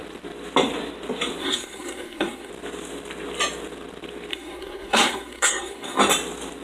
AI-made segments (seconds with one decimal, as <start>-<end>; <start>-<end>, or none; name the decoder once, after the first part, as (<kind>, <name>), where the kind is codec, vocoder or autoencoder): 1.4-2.5 (codec, SNAC); 4.3-6.0

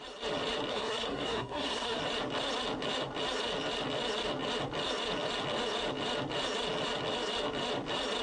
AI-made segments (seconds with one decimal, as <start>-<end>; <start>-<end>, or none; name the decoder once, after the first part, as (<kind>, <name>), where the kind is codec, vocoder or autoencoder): 0.7-2.0 (codec, SNAC)

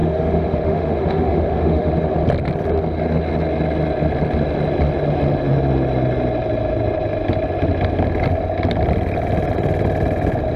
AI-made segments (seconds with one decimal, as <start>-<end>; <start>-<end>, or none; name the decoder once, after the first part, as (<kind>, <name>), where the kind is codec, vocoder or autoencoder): 0.0-1.9 (autoencoder, DAC-VAE)

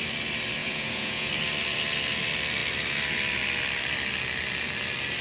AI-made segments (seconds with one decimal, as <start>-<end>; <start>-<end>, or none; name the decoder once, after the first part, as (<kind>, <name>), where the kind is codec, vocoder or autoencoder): 0.6-1.3 (vocoder, Vocos)

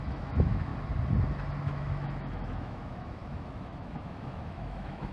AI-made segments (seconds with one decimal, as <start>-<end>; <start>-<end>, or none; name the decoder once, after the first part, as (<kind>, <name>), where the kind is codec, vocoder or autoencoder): 0.0-0.7 (autoencoder, DAC-VAE); 1.6-5.1

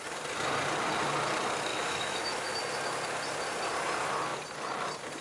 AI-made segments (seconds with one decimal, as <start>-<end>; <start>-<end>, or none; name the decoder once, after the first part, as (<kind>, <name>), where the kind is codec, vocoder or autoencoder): 1.7-2.6 (autoencoder, DAC-VAE)

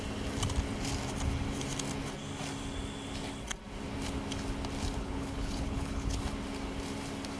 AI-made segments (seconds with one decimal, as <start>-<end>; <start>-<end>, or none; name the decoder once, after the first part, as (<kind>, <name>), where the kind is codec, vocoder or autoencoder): 5.0-6.2 (codec, HILCodec)